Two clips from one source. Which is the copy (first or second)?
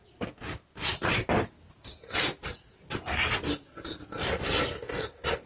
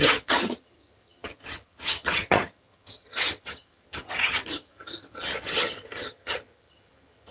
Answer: second